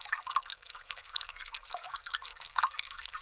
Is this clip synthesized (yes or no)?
yes